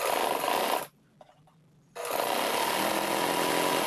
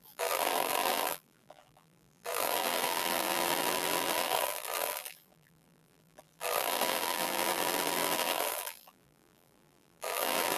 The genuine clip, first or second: first